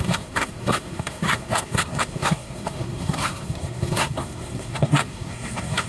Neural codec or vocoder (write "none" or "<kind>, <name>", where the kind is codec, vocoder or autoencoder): codec, SNAC